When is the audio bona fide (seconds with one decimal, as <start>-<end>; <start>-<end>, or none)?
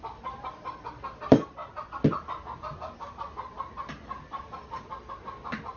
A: 0.0-5.8